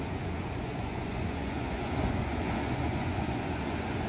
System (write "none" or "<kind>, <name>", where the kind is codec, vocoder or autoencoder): vocoder, Vocos